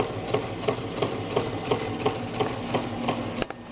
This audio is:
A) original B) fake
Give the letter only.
A